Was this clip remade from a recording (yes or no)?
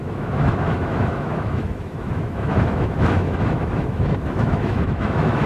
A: yes